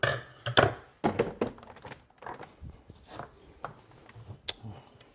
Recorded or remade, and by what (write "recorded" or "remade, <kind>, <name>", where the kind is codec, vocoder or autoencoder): recorded